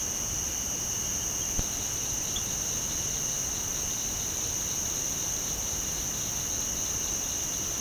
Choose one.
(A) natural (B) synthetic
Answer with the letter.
A